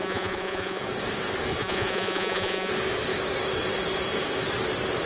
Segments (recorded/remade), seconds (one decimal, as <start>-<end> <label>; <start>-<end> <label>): 0.0-0.8 remade; 0.8-1.6 recorded; 1.6-2.7 remade; 2.7-5.1 recorded